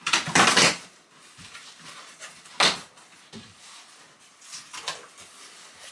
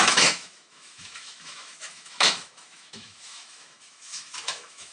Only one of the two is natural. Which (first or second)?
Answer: first